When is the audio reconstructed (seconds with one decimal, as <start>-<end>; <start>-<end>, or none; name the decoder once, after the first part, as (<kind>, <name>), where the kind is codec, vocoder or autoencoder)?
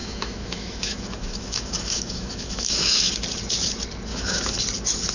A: 0.0-3.1 (autoencoder, DAC-VAE); 4.1-4.6